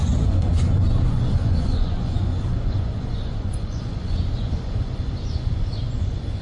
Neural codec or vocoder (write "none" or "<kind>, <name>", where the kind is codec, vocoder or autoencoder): vocoder, Vocos